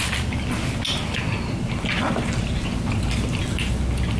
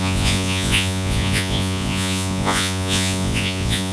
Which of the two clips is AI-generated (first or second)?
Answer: second